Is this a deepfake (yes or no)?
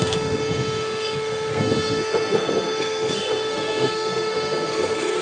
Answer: yes